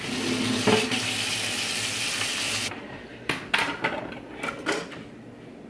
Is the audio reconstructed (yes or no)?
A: no